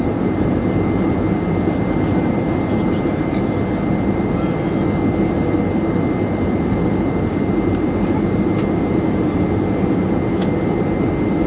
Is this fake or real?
real